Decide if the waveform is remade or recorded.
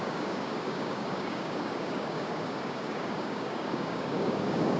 remade